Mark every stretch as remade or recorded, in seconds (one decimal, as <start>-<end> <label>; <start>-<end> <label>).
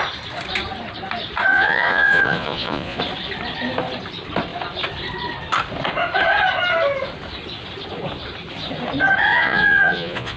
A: 0.0-1.5 recorded; 1.5-3.0 remade; 3.0-9.3 recorded; 9.3-10.4 remade